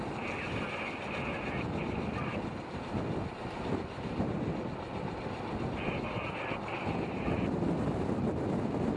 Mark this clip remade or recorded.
recorded